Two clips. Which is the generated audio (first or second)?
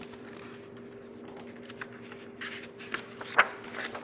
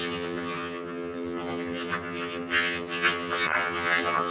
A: second